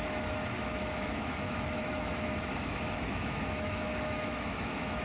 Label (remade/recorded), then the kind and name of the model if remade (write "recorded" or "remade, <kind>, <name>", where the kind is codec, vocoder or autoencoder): remade, autoencoder, DAC-VAE